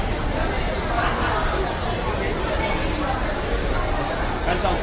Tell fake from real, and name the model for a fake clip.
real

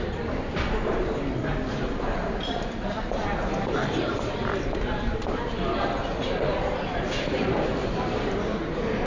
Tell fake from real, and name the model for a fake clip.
fake, vocoder, BigVGAN v2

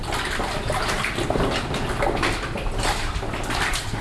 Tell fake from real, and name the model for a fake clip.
real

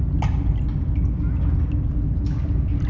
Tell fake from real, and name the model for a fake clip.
real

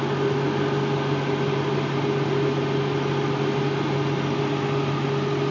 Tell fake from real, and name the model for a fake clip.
real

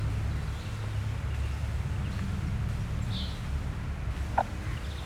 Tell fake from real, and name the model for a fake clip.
real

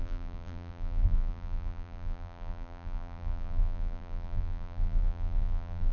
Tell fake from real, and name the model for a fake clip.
fake, vocoder, BigVGAN v2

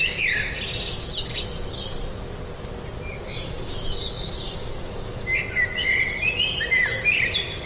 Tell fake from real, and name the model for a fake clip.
real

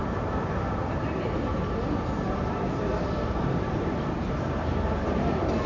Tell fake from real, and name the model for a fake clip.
fake, vocoder, BigVGAN v2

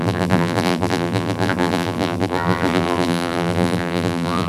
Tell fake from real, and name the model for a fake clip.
fake, vocoder, BigVGAN v2